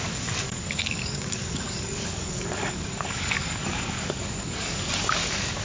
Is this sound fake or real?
fake